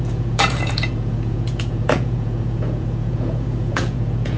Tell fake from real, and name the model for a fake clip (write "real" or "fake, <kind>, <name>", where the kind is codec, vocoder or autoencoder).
fake, vocoder, Vocos